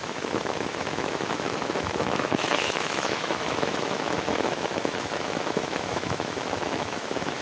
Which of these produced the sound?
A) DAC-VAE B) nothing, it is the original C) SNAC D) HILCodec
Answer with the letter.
A